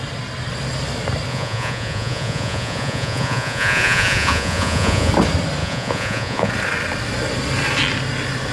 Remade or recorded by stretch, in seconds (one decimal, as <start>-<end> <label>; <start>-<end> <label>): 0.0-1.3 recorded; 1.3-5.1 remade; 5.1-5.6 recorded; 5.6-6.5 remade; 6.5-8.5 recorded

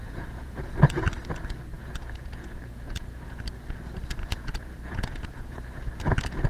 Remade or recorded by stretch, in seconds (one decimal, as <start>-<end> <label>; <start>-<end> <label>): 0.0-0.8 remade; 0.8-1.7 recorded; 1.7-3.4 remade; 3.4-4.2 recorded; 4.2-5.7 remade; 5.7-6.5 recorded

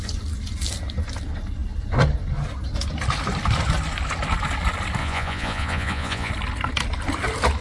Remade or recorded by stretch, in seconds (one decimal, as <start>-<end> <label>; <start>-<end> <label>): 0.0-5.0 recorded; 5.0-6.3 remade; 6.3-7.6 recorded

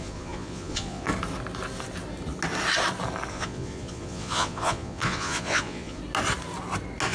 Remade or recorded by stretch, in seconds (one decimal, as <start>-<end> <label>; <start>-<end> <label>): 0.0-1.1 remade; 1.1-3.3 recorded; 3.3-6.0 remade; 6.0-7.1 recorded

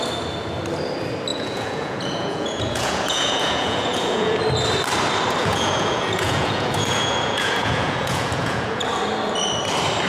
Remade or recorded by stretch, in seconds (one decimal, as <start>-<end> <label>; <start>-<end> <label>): 0.0-1.3 recorded; 1.3-4.4 remade; 4.4-5.4 recorded; 5.4-8.8 remade; 8.8-10.1 recorded

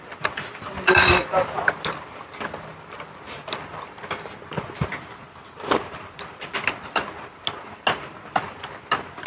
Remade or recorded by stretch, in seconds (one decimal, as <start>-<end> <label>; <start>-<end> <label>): 0.0-9.3 recorded

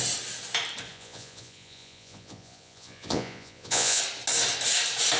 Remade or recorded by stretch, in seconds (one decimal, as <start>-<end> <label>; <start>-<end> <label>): 0.0-0.9 recorded; 0.9-4.0 remade; 4.0-5.2 recorded

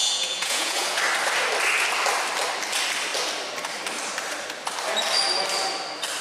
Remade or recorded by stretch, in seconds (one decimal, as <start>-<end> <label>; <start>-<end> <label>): 0.0-1.0 remade; 1.0-6.2 recorded